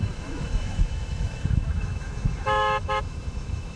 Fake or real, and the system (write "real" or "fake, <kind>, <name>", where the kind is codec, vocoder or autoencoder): fake, autoencoder, DAC-VAE